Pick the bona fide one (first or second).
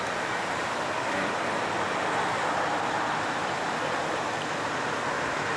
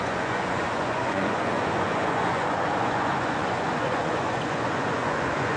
first